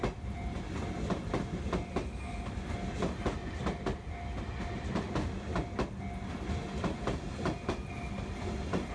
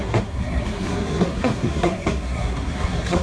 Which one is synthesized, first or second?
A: second